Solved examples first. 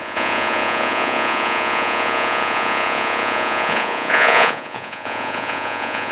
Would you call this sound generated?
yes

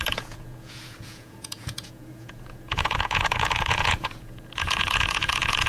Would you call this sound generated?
yes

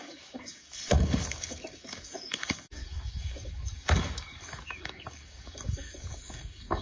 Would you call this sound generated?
yes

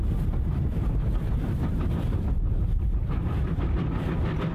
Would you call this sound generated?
no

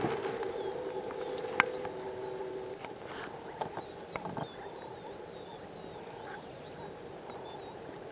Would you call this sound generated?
no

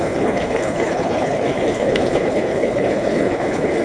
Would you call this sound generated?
yes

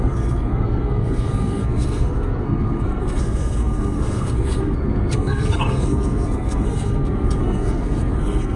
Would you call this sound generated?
yes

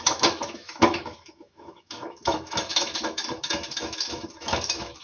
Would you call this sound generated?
yes